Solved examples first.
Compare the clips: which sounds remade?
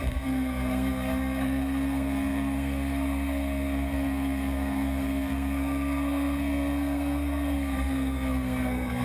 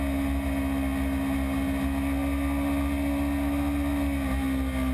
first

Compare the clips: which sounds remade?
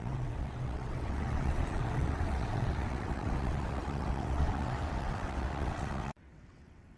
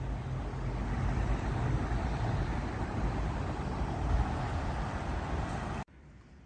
first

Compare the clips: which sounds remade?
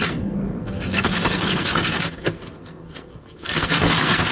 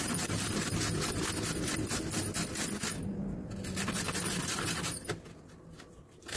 first